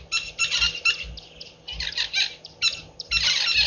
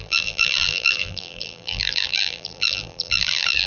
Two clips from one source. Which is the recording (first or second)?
first